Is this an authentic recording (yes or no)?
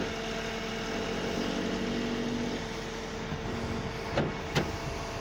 yes